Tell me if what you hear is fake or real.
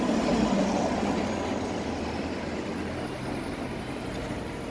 real